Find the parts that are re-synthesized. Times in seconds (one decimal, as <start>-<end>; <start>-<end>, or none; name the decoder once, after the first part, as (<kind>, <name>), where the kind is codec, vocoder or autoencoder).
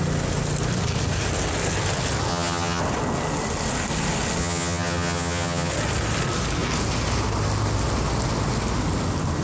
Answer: 2.3-2.8 (vocoder, HiFi-GAN); 4.4-5.7